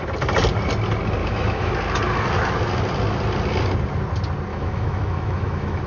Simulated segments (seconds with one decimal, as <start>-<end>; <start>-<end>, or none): 1.2-1.7; 4.5-5.9